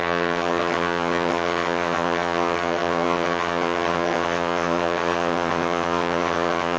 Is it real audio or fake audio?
fake